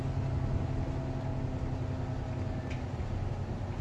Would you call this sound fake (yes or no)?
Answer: no